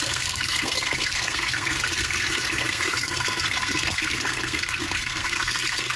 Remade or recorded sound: remade